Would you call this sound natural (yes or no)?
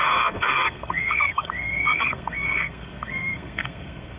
no